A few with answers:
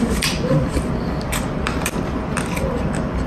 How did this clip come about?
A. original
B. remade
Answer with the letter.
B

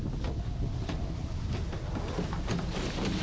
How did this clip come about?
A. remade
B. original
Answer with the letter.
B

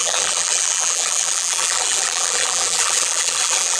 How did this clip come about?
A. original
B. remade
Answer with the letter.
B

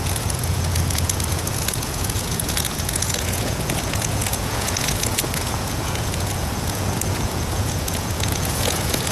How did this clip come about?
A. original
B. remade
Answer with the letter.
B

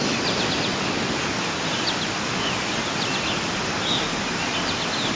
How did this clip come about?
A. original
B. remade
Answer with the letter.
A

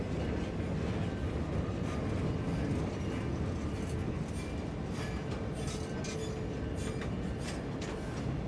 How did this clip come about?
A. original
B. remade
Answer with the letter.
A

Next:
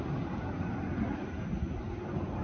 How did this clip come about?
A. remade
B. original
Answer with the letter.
B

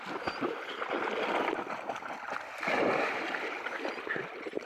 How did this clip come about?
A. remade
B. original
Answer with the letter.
B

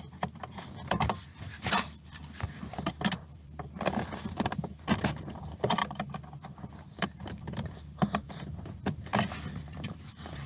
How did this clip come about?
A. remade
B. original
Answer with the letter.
A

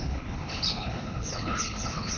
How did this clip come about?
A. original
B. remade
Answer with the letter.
B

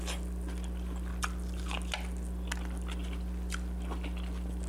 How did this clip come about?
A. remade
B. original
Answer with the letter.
B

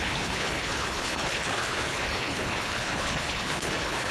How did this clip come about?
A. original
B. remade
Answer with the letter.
B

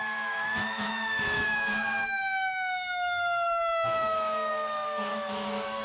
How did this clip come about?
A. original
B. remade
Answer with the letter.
B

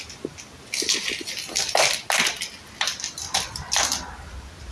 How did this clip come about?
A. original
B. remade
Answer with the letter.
A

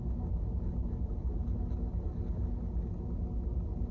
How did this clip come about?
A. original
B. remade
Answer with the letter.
A